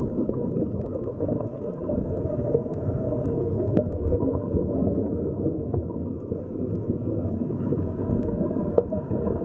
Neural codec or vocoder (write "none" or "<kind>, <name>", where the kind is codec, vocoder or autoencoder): codec, SNAC